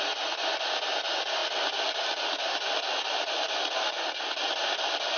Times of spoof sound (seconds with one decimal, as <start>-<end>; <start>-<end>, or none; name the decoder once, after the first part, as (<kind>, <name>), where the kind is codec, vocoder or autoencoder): none